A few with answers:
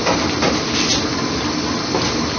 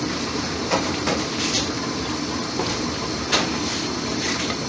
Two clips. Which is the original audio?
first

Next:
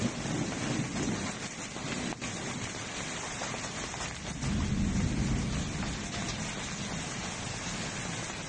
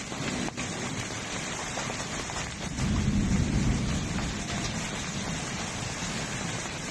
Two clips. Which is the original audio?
first